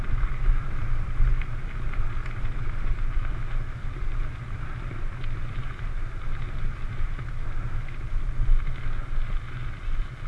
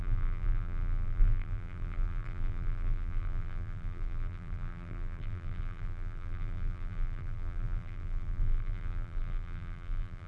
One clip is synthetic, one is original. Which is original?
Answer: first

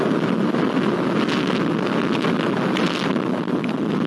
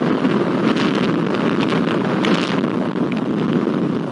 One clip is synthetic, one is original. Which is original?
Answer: first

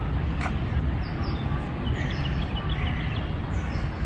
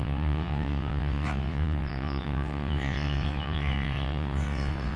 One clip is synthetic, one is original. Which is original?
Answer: first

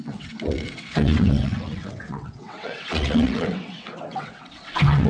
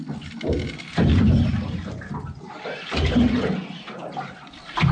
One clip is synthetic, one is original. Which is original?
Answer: second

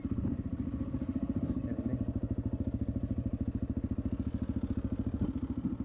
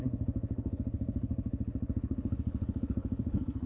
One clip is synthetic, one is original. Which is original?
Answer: first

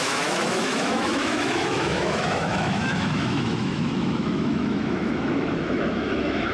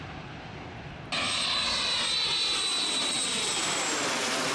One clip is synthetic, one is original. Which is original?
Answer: second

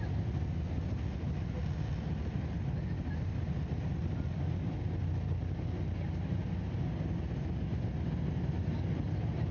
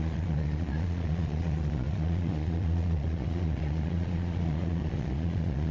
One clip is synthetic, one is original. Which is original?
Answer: first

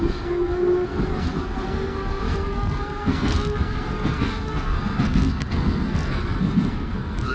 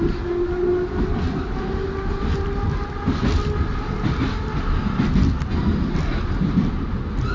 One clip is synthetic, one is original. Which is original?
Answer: second